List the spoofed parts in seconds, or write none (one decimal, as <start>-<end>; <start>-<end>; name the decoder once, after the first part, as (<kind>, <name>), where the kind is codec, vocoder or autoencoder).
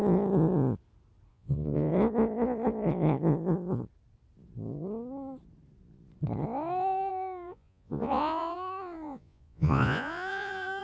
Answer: 1.3-1.9 (vocoder, Vocos); 7.1-10.8